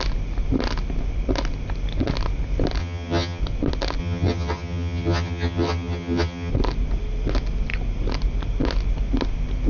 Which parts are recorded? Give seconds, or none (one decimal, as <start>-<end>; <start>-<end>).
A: 0.0-2.8; 3.4-4.0; 6.5-9.7